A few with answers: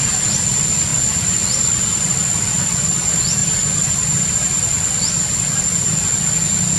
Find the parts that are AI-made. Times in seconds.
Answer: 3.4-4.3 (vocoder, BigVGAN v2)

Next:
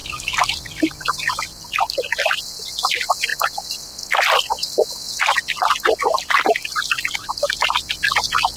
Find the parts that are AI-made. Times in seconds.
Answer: 0.0-2.4 (vocoder, BigVGAN v2); 6.6-8.0

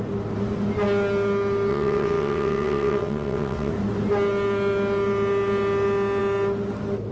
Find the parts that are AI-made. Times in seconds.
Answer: 1.7-3.7 (vocoder, WaveNeXt)

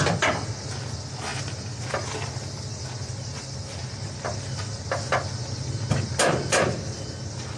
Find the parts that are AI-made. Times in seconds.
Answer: none

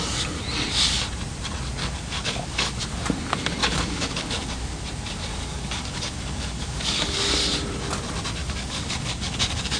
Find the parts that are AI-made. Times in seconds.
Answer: 1.8-2.8 (codec, DAC); 3.6-4.8; 5.3-7.2; 8.4-9.8